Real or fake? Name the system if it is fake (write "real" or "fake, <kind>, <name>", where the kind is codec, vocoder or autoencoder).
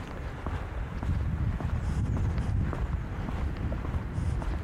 real